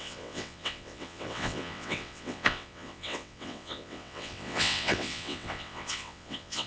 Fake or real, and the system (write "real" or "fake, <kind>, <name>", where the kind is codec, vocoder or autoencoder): fake, vocoder, WaveNeXt